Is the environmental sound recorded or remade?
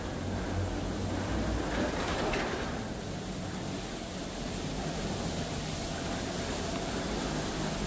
recorded